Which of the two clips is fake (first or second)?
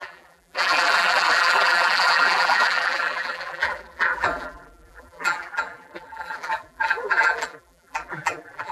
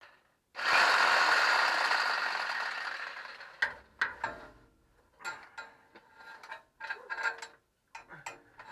first